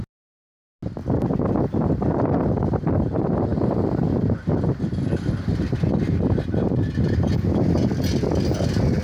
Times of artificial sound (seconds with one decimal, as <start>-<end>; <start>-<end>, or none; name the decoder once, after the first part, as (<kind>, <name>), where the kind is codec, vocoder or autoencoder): none